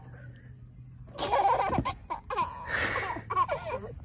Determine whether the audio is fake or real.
real